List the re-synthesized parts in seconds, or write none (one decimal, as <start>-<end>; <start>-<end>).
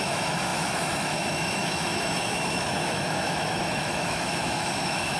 0.0-5.2